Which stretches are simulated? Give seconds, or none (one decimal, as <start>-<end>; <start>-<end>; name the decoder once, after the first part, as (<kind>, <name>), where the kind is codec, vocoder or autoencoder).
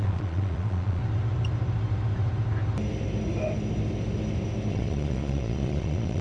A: 0.0-1.0 (vocoder, Vocos); 4.7-6.2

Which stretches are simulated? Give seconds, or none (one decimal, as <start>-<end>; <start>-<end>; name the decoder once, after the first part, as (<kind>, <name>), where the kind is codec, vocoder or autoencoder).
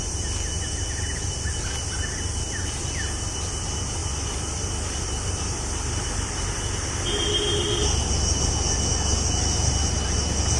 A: none